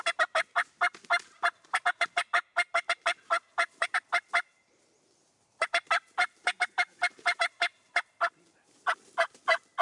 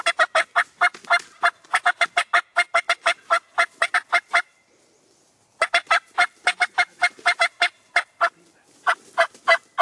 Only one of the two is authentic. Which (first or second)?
second